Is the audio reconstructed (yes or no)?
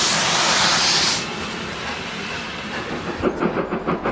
yes